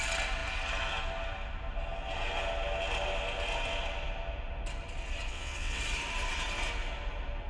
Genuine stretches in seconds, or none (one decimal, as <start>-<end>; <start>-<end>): 0.0-5.3; 5.8-7.5